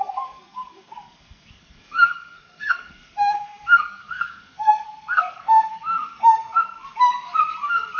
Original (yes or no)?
no